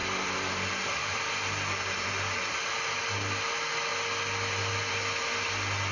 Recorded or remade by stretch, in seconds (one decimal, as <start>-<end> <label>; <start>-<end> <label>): 0.0-5.9 recorded

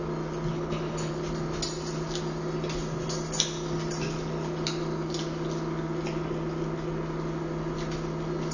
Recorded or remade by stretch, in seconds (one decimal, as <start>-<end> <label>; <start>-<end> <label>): 0.0-0.5 recorded; 0.5-1.1 remade; 1.1-8.5 recorded